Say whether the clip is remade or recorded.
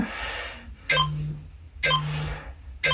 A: recorded